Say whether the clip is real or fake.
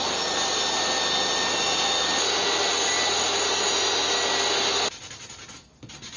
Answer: real